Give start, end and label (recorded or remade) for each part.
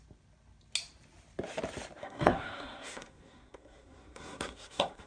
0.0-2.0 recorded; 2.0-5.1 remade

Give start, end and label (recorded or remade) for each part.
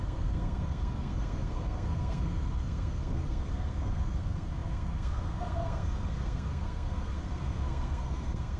0.0-8.6 remade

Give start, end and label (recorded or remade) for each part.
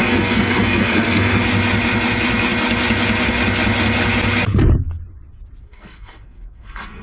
0.0-1.4 remade; 1.4-5.6 recorded; 5.6-7.0 remade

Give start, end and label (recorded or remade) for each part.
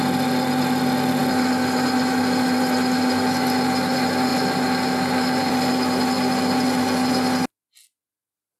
0.0-8.6 recorded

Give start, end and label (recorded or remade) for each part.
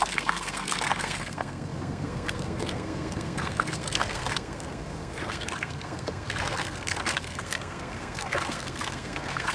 0.0-9.5 remade